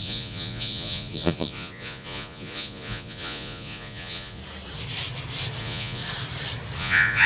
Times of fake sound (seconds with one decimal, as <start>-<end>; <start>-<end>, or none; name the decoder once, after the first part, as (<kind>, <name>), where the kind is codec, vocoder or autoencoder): 0.0-4.4 (vocoder, Vocos); 5.6-6.0; 6.8-7.3